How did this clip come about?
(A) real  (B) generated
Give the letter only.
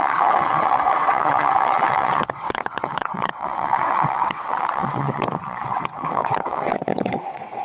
B